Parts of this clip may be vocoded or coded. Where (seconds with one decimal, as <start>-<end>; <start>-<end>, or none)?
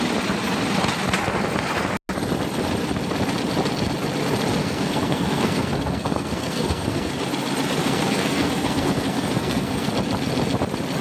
4.6-7.1; 7.8-9.9